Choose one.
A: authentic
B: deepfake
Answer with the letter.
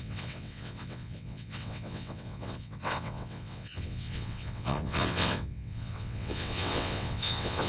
B